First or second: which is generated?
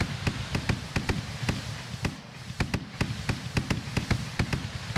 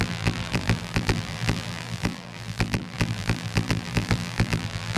second